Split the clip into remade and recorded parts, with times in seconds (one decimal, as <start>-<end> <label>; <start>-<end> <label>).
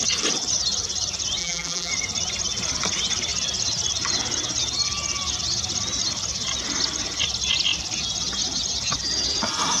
0.0-1.4 recorded; 1.4-1.9 remade; 1.9-9.8 recorded